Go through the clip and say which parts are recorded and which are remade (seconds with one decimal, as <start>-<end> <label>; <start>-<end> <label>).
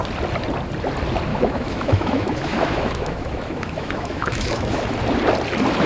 0.0-1.3 recorded; 1.3-4.8 remade; 4.8-5.9 recorded